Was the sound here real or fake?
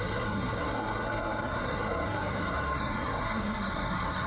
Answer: fake